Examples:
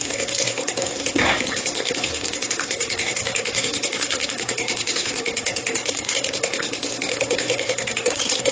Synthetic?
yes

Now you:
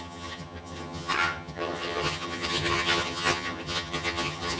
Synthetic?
yes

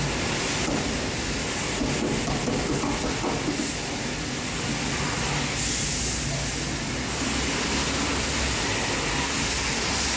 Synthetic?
no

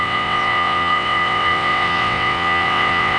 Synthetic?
yes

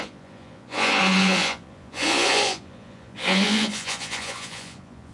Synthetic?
yes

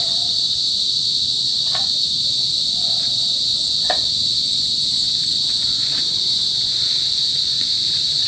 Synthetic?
yes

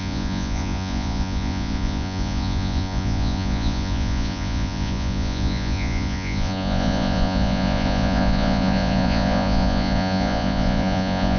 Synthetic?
yes